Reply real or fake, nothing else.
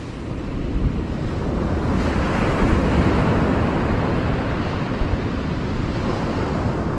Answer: real